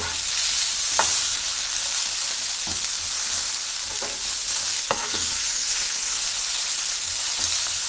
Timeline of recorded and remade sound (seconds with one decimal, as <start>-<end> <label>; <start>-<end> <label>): 0.0-4.7 recorded; 4.7-6.2 remade; 6.2-7.9 recorded